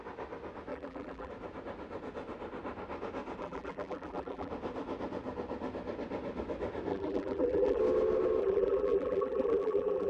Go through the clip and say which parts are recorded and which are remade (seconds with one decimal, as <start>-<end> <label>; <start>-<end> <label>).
0.0-0.7 recorded; 0.7-1.3 remade; 1.3-3.4 recorded; 3.4-4.5 remade; 4.5-6.9 recorded; 6.9-7.8 remade; 7.8-8.4 recorded; 8.4-10.1 remade